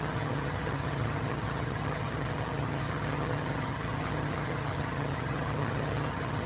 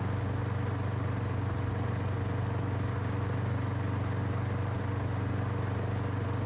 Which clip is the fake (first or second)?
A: first